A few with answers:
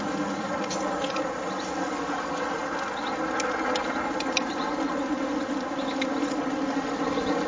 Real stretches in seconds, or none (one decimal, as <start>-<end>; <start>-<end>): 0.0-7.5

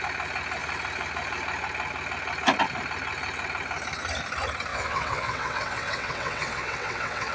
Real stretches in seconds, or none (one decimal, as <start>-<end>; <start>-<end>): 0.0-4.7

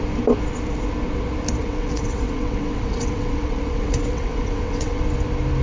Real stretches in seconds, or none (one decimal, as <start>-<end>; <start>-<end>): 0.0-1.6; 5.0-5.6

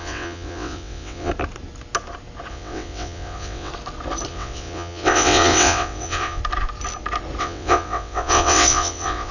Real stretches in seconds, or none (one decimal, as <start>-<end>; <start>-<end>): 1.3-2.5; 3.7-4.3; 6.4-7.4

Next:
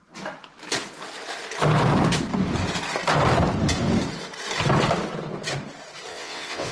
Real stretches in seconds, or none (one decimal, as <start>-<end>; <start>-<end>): 0.0-6.1